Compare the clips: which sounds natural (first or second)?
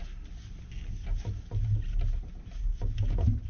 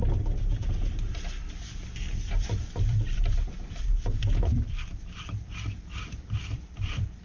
first